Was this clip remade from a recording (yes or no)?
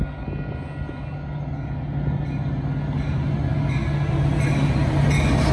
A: no